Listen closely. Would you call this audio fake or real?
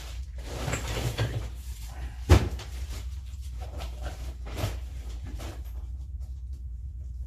fake